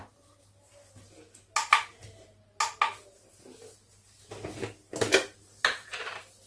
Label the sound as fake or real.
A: real